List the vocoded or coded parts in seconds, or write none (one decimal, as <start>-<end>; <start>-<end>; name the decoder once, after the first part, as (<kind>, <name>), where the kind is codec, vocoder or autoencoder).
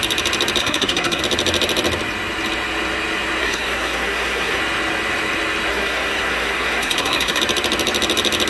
0.6-1.2 (codec, SNAC); 3.4-4.6; 5.7-7.4